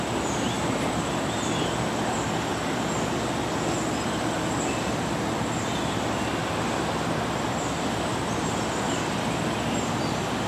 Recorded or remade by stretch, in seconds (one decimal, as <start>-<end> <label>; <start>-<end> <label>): 0.0-10.5 recorded